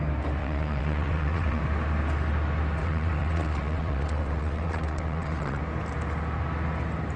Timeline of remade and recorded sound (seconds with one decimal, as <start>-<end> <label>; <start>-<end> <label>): 0.0-0.4 recorded; 0.4-1.6 remade; 1.6-2.8 recorded; 2.8-5.6 remade; 5.6-7.2 recorded